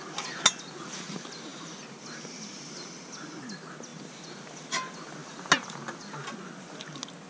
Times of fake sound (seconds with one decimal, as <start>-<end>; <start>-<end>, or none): none